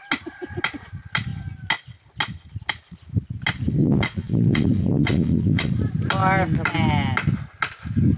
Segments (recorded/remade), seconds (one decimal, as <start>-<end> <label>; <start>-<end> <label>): 0.0-3.8 recorded; 3.8-5.7 remade; 5.7-8.2 recorded